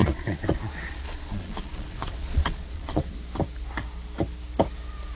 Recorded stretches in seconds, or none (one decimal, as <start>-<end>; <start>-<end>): 3.1-5.2

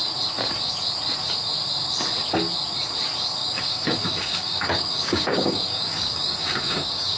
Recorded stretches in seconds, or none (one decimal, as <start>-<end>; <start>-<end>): 0.0-3.4

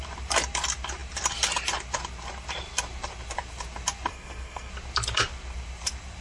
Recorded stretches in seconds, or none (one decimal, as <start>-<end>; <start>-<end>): 0.0-4.1; 4.7-6.2

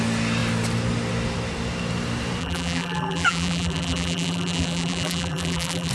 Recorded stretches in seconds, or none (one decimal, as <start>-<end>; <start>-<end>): 0.0-2.4

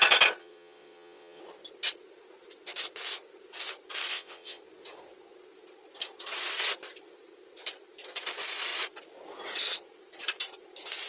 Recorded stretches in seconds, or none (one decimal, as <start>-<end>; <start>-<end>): 0.0-0.4; 1.4-4.1; 4.6-11.1